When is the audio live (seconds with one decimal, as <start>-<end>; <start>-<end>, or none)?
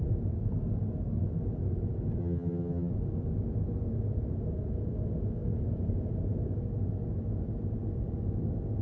0.0-2.2; 2.9-8.8